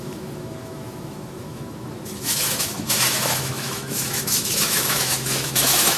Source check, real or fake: fake